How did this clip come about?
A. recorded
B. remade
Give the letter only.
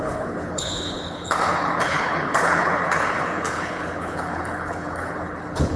B